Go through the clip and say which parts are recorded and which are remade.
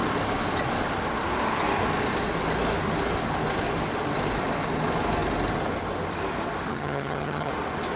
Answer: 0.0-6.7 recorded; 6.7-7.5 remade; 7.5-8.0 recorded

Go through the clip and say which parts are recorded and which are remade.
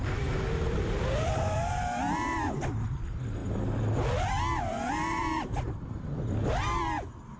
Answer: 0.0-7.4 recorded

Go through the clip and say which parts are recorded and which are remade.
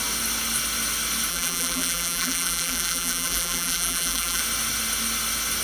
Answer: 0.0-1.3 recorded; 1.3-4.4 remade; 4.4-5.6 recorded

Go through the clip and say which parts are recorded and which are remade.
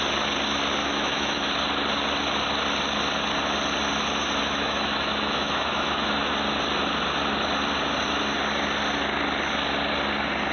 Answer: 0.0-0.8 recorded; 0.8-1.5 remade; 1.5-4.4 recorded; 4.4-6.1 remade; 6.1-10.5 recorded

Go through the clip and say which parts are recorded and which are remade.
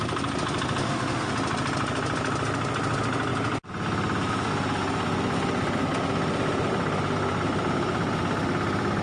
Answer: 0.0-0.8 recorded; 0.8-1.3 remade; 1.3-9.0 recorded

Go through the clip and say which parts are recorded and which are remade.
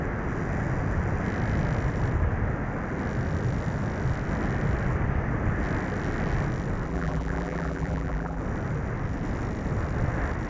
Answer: 0.0-6.9 recorded; 6.9-8.4 remade; 8.4-10.5 recorded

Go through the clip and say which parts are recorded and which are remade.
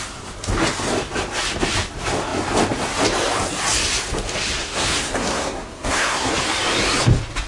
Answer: 0.0-4.6 recorded; 4.6-6.3 remade; 6.3-7.5 recorded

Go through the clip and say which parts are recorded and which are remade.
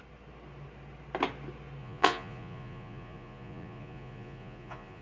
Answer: 0.0-1.8 recorded; 1.8-5.0 remade